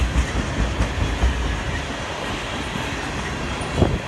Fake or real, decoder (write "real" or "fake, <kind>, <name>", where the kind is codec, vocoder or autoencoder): real